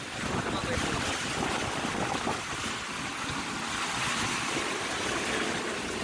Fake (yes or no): no